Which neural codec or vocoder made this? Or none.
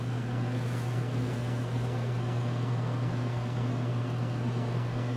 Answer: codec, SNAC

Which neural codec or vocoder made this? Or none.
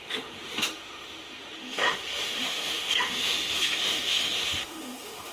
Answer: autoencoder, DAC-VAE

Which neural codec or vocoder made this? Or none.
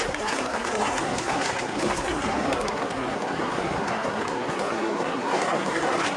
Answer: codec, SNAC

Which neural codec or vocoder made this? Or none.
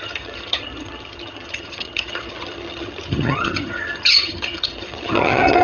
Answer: vocoder, HiFi-GAN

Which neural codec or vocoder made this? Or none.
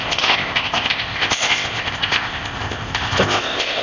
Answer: codec, ZipCodec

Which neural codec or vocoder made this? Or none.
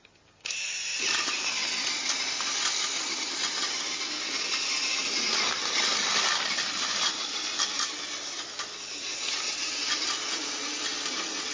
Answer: none